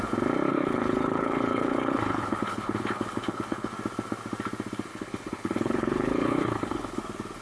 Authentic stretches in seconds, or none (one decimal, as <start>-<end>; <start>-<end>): 0.0-0.5; 3.7-4.9; 7.0-7.4